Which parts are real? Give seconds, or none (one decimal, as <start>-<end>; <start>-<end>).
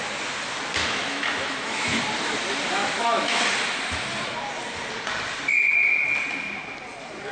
0.0-0.8; 2.0-2.8; 3.4-7.3